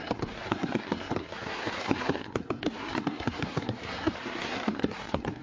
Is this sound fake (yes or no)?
yes